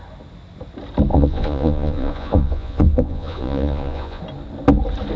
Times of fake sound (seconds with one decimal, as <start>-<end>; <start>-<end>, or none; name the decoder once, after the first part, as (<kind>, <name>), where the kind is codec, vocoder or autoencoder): 1.1-4.2 (vocoder, Vocos)